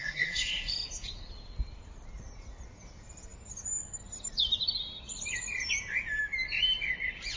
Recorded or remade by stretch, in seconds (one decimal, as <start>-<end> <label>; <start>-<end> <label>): 0.0-0.7 remade; 0.7-7.4 recorded